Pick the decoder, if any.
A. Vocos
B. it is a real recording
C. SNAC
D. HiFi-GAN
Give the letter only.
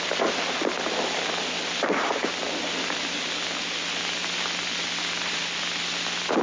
B